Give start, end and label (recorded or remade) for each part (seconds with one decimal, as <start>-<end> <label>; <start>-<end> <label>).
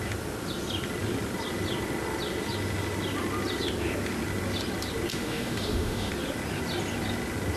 0.0-5.1 recorded; 5.1-6.1 remade; 6.1-7.6 recorded